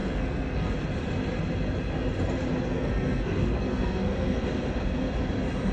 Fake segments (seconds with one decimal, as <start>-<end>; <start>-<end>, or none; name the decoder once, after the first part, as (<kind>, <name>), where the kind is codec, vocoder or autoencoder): 0.0-0.7 (codec, SNAC); 2.7-5.1